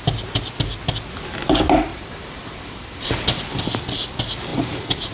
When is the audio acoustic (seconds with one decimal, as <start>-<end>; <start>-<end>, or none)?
0.0-1.9; 3.4-4.5